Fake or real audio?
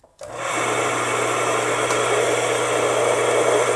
real